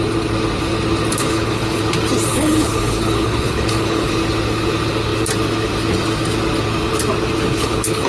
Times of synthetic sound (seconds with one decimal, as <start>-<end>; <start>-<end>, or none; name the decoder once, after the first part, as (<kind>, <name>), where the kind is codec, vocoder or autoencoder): 1.2-1.8 (codec, HILCodec); 2.3-4.1; 7.5-8.1